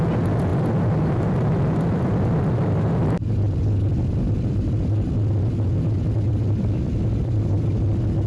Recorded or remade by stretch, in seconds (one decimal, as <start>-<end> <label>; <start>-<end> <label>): 0.0-0.5 recorded; 0.5-4.7 remade; 4.7-6.3 recorded; 6.3-7.7 remade; 7.7-8.3 recorded